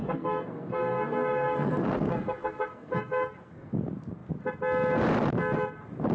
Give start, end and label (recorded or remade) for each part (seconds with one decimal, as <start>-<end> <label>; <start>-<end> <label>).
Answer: 0.0-3.7 remade; 3.7-6.1 recorded